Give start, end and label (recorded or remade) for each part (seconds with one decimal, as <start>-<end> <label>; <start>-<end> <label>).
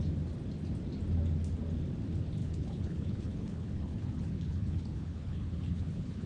0.0-2.4 recorded; 2.4-6.3 remade